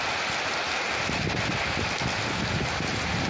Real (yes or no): yes